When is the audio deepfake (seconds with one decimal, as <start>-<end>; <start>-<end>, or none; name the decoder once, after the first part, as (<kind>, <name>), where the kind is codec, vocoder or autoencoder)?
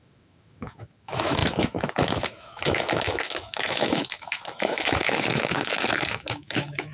0.0-6.9 (autoencoder, DAC-VAE)